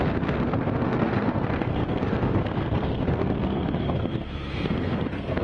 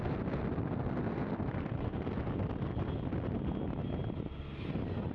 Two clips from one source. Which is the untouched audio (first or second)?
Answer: second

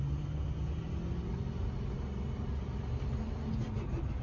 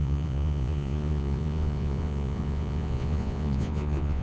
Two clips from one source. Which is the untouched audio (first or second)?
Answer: first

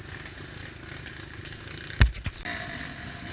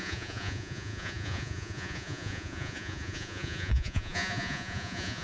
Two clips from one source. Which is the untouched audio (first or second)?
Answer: first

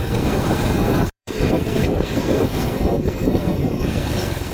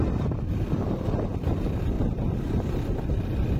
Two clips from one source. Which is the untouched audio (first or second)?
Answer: second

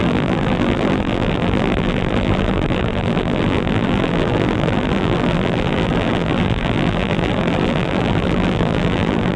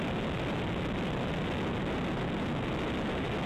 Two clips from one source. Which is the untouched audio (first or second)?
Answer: second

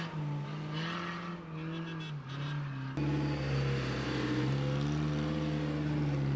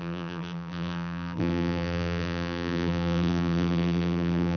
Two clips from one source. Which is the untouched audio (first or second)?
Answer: first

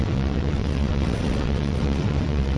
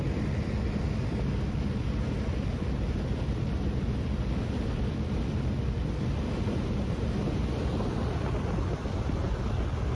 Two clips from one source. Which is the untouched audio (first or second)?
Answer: second